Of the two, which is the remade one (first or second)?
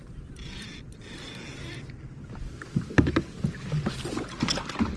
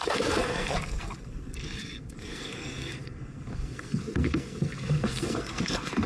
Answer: second